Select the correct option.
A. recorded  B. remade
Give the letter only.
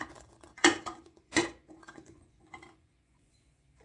B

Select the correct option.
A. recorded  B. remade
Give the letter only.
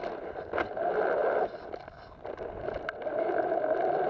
A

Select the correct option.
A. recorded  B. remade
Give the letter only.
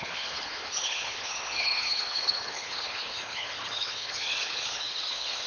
B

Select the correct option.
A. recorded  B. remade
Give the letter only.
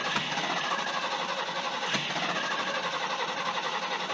A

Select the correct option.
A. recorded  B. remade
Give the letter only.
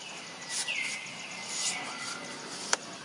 A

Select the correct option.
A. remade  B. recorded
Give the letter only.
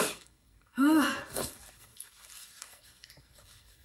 A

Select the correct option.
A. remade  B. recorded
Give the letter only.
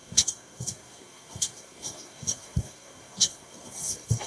A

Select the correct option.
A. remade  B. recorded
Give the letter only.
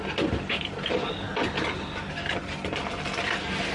B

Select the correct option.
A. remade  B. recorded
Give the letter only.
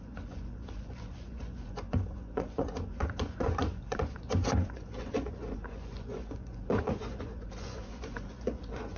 A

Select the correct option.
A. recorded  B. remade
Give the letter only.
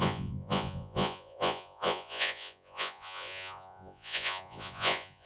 B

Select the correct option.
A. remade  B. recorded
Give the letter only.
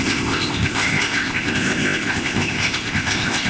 A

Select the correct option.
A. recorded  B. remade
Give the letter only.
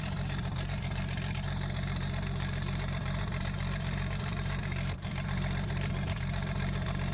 B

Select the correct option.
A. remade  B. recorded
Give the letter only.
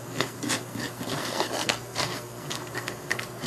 A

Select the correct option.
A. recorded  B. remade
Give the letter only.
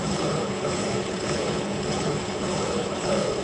B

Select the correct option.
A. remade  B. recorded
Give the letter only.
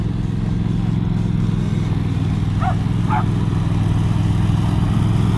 B